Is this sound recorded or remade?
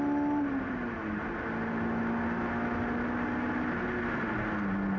recorded